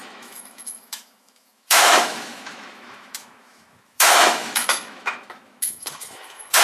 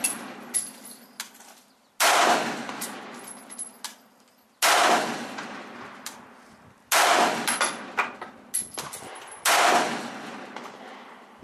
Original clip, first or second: second